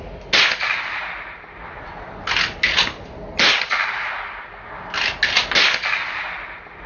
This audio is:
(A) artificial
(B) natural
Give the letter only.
B